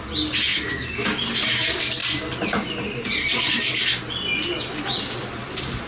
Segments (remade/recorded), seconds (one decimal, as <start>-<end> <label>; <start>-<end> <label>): 0.0-0.5 recorded; 0.5-1.2 remade; 1.2-5.9 recorded